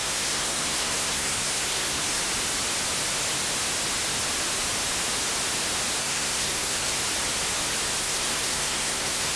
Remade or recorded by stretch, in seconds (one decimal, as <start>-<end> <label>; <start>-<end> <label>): 0.0-2.2 remade; 2.2-6.0 recorded; 6.0-6.9 remade; 6.9-8.0 recorded; 8.0-9.4 remade